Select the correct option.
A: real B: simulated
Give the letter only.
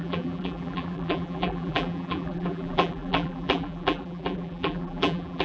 B